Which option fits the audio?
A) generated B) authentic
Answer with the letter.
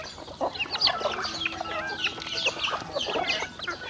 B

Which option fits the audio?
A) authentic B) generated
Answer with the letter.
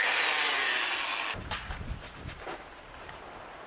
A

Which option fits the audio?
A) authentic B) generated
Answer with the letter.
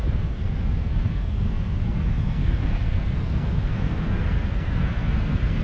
B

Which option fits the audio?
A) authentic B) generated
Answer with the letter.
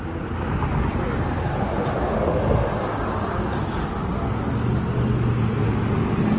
A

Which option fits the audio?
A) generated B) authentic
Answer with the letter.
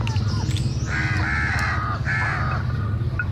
B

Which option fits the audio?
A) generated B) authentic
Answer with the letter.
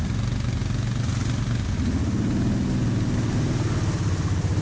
B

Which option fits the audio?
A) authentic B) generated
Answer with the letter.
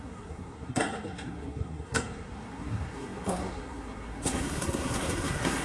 B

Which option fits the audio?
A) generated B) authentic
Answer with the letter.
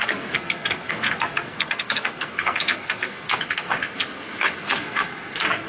A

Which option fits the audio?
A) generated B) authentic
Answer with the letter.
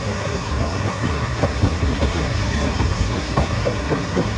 A